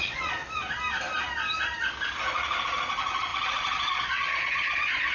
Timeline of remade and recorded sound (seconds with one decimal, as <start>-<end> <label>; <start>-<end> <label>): 0.0-0.4 remade; 0.4-2.6 recorded; 2.6-5.1 remade